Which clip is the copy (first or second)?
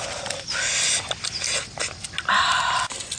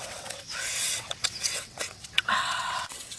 second